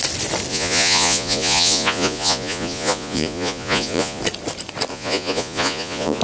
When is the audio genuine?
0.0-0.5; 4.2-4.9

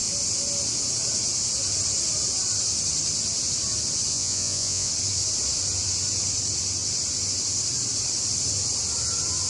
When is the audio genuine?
0.0-4.1; 4.9-9.5